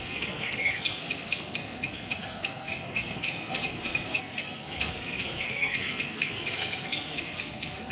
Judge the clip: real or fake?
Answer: fake